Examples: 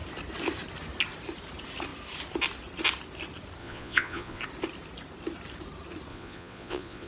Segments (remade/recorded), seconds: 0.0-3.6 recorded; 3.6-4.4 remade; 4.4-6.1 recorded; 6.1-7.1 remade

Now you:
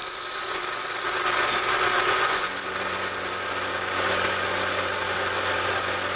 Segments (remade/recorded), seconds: 0.0-2.1 recorded; 2.1-2.5 remade; 2.5-6.2 recorded

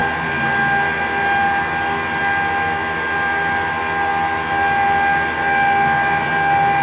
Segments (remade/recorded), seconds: 0.0-6.8 recorded

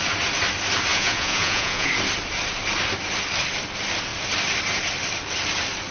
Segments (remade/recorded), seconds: 0.0-0.9 recorded; 0.9-1.9 remade; 1.9-5.9 recorded